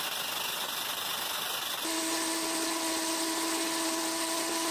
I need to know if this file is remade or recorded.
recorded